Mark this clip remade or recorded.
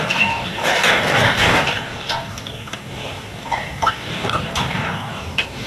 remade